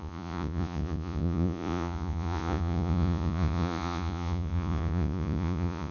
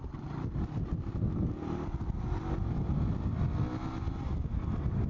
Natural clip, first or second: second